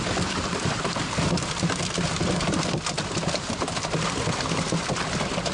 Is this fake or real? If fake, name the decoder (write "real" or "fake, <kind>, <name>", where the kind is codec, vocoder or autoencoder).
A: real